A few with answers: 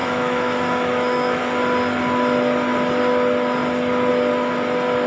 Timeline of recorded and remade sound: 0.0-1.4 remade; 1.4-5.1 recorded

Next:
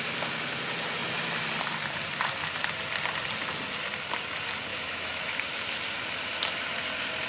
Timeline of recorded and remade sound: 0.0-4.7 recorded; 4.7-5.2 remade; 5.2-7.3 recorded

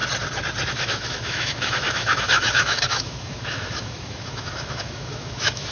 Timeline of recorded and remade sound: 0.0-0.7 recorded; 0.7-5.7 remade

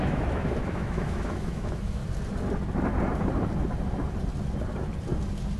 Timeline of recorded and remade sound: 0.0-2.0 remade; 2.0-5.6 recorded

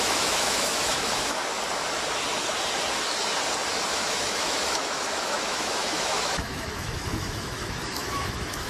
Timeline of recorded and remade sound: 0.0-1.4 remade; 1.4-3.9 recorded; 3.9-8.7 remade

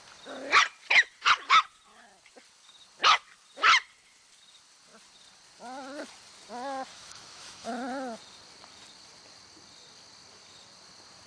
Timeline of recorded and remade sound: 0.0-6.9 recorded; 6.9-7.7 remade; 7.7-11.3 recorded